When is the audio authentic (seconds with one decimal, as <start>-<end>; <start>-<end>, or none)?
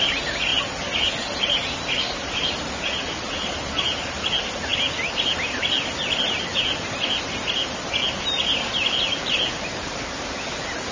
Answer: 0.0-10.9